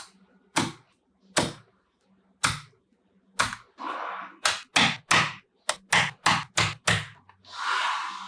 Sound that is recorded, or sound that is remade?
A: recorded